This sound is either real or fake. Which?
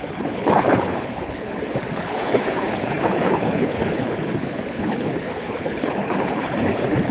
fake